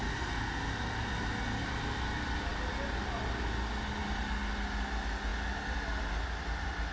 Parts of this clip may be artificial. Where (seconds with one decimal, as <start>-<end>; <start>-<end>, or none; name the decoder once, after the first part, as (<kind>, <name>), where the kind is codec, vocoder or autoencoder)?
none